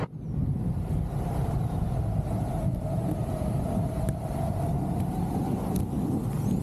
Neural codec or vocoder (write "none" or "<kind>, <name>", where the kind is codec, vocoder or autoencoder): none